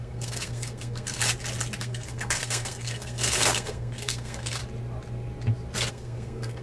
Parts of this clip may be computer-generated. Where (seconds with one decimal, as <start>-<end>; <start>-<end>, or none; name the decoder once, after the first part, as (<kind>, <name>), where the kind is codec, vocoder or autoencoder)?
0.0-1.2 (codec, SNAC); 1.8-4.6; 5.9-6.6